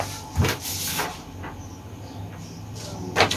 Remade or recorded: recorded